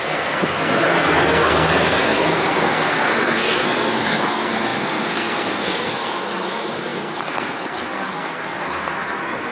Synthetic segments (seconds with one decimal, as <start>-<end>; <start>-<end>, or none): 0.0-9.5